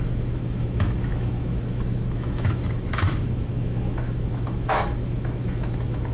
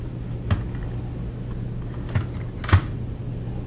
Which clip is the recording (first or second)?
second